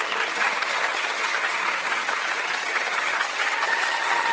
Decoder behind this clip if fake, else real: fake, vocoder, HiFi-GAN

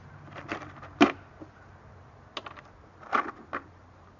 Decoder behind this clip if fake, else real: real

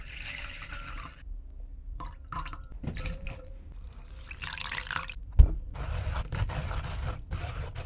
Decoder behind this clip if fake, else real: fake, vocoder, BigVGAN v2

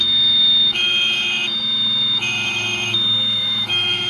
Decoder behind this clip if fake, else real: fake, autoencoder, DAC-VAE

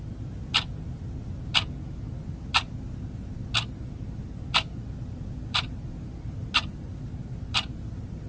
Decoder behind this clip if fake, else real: real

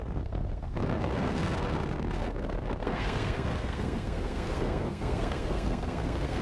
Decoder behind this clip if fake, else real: fake, codec, SNAC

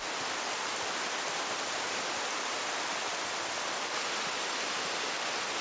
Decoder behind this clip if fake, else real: real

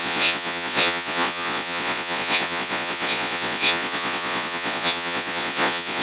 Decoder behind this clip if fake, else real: fake, vocoder, Vocos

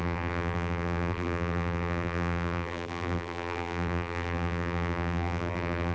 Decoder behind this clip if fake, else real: fake, vocoder, BigVGAN v2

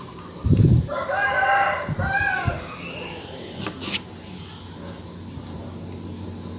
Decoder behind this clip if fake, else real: real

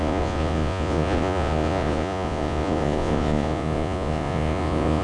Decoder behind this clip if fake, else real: fake, vocoder, Vocos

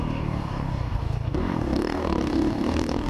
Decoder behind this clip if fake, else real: fake, codec, DAC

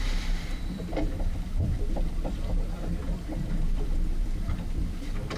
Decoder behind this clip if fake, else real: fake, vocoder, BigVGAN v2